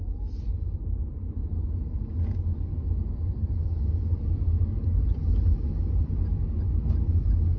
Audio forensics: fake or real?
real